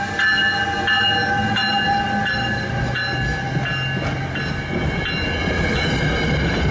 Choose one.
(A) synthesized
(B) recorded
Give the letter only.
B